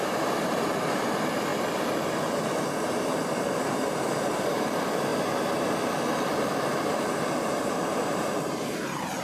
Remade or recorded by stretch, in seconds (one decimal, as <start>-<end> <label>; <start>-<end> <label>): 0.0-5.1 remade; 5.1-7.5 recorded; 7.5-9.2 remade